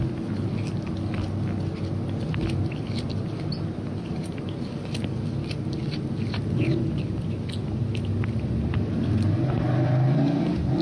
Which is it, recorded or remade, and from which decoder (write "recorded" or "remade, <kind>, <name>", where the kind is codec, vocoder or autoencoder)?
recorded